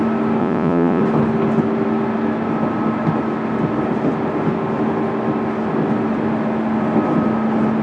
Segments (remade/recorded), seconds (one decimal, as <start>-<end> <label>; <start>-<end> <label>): 0.0-0.4 recorded; 0.4-1.0 remade; 1.0-7.8 recorded